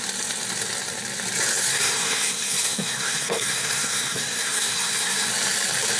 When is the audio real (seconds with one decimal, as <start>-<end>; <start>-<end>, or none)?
0.0-1.7; 5.3-6.0